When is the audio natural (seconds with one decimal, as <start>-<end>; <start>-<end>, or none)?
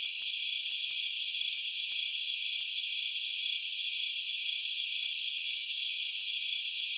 0.0-5.4; 6.1-7.0